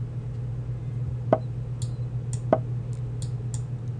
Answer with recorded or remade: recorded